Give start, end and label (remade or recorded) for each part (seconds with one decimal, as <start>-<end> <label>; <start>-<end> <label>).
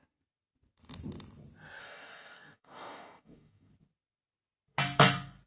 0.0-1.8 recorded; 1.8-3.7 remade; 3.7-5.5 recorded